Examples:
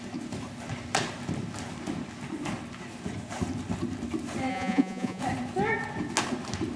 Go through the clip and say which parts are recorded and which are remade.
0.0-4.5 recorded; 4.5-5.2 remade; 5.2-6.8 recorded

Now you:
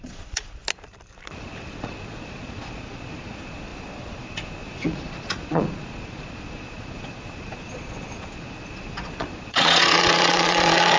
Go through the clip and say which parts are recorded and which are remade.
0.0-0.6 remade; 0.6-1.4 recorded; 1.4-11.0 remade

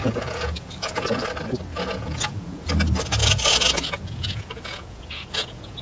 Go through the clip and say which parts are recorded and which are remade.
0.0-1.0 remade; 1.0-1.7 recorded; 1.7-2.7 remade; 2.7-3.2 recorded; 3.2-5.8 remade

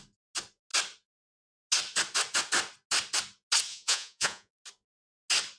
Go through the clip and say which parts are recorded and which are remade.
0.0-3.7 recorded; 3.7-4.6 remade; 4.6-5.6 recorded

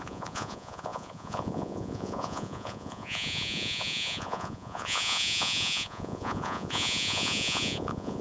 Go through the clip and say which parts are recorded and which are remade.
0.0-8.2 remade

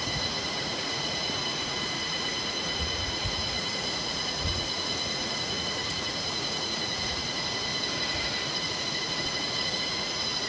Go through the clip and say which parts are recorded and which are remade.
0.0-7.7 remade; 7.7-8.5 recorded; 8.5-10.5 remade

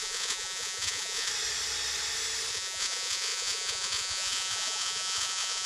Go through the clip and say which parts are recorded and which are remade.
0.0-1.3 remade; 1.3-2.5 recorded; 2.5-5.7 remade